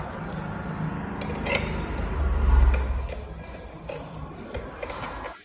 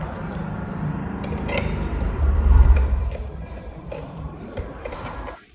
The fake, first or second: second